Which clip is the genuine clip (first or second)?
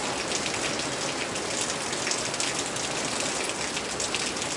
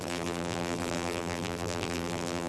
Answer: first